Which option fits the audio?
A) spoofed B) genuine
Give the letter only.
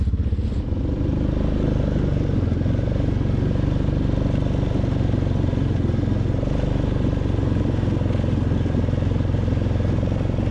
B